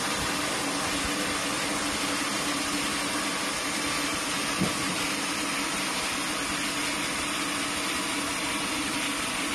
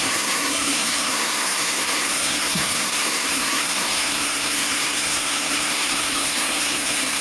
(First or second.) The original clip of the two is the first